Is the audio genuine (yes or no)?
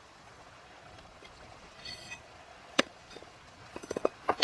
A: no